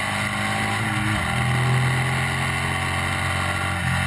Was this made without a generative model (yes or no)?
yes